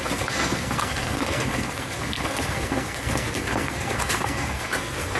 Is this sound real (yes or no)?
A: no